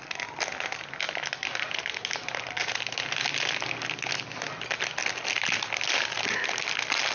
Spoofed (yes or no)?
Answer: no